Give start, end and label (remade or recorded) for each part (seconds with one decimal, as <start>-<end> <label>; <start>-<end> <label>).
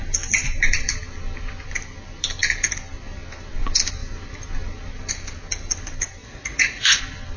0.0-6.2 recorded; 6.2-7.0 remade; 7.0-7.4 recorded